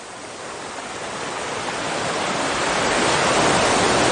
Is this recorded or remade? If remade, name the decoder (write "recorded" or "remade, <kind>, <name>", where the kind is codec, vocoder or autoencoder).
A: recorded